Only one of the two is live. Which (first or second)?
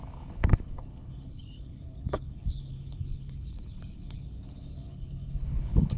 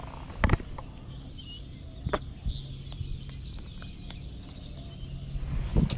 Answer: second